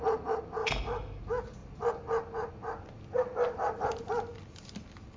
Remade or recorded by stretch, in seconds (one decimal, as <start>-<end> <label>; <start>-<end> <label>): 0.0-0.6 recorded; 0.6-1.2 remade; 1.2-5.2 recorded